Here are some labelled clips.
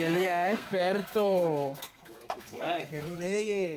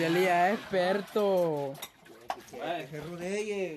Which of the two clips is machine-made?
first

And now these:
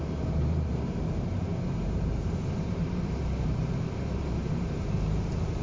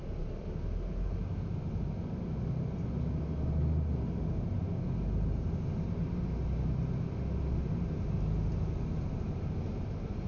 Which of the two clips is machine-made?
first